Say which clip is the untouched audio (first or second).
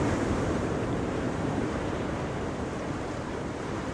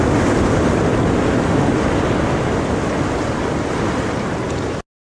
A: second